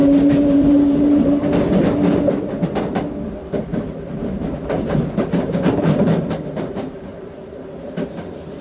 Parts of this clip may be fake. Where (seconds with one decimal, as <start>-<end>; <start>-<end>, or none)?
0.0-1.5; 4.2-6.6; 7.1-7.8